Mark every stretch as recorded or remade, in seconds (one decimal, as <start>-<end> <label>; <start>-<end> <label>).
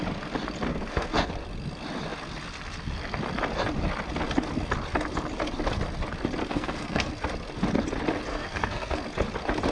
0.0-0.7 recorded; 0.7-1.3 remade; 1.3-6.4 recorded; 6.4-7.1 remade; 7.1-8.3 recorded; 8.3-9.0 remade; 9.0-9.7 recorded